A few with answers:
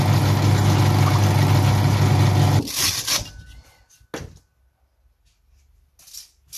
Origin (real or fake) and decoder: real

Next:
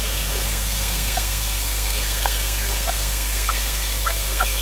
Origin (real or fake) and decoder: fake, codec, SNAC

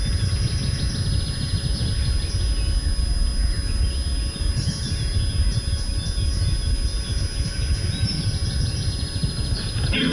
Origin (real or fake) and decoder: real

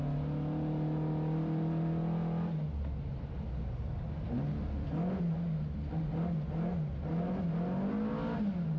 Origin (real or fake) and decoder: real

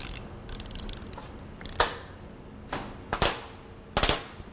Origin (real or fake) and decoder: real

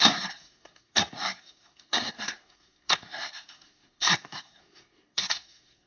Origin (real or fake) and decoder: fake, codec, SNAC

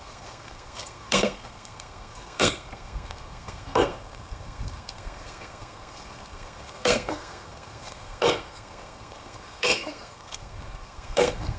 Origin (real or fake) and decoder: fake, codec, SNAC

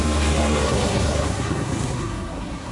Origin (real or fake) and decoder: fake, codec, SNAC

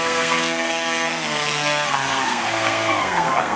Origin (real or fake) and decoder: fake, codec, SNAC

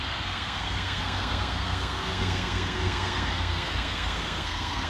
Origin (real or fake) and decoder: fake, codec, SNAC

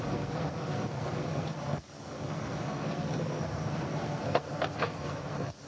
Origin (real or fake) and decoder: fake, codec, SNAC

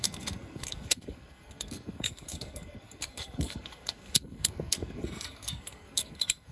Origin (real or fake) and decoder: fake, codec, SNAC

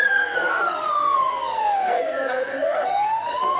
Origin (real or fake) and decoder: fake, codec, SNAC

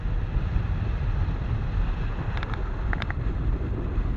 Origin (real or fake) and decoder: real